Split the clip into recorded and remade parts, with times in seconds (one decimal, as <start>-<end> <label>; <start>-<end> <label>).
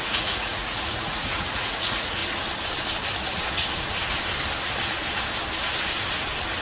0.0-2.2 remade; 2.2-6.6 recorded